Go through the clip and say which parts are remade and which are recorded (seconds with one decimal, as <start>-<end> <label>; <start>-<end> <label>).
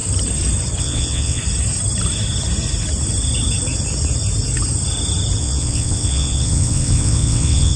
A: 0.0-0.8 recorded; 0.8-1.4 remade; 1.4-5.4 recorded; 5.4-7.8 remade